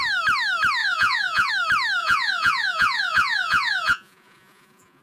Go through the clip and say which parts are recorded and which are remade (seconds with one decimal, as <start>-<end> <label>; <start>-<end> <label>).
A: 0.0-0.8 recorded; 0.8-1.5 remade; 1.5-2.0 recorded; 2.0-5.0 remade